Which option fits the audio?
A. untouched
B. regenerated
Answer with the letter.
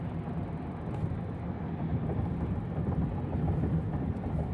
A